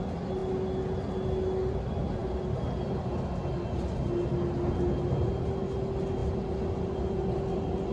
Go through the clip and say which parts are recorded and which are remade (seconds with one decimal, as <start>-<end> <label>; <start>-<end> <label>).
0.0-7.9 recorded